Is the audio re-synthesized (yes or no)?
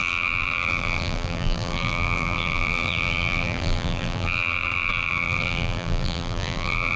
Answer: yes